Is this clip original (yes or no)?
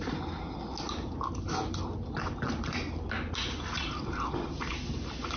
yes